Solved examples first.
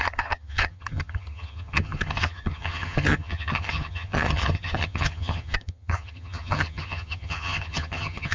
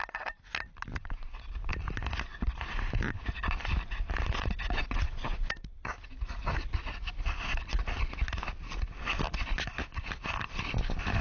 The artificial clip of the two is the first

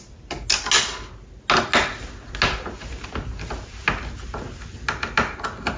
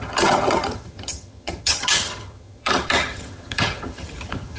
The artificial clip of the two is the second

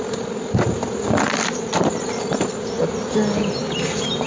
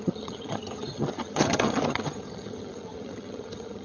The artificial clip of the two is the second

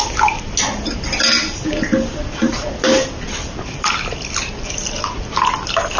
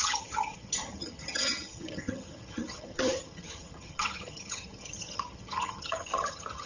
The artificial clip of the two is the second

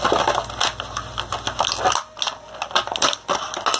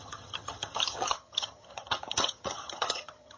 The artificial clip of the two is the second